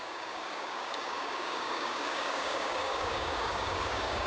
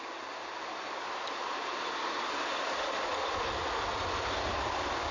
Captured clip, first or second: second